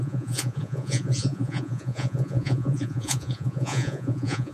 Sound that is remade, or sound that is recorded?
remade